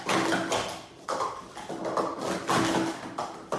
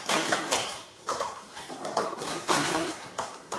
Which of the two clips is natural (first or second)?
first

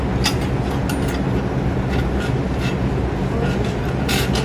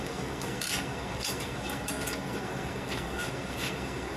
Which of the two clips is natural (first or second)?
first